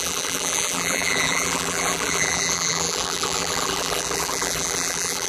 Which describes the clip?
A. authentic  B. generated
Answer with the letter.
B